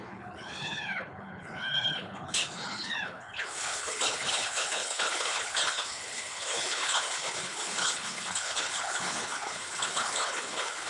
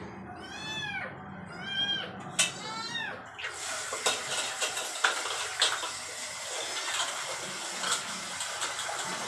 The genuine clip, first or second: second